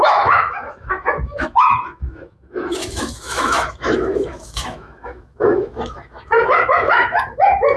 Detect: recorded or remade remade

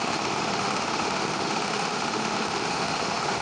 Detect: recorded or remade remade